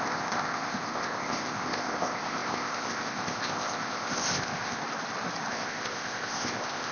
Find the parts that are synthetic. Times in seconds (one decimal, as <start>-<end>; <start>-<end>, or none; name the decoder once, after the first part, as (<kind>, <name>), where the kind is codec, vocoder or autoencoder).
0.0-4.8 (codec, ZipCodec); 5.5-6.9